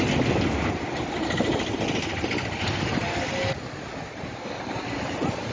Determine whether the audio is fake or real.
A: real